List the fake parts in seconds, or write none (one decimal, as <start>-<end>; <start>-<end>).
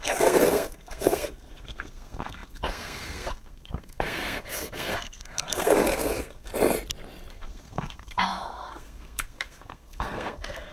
0.0-6.5; 7.3-10.7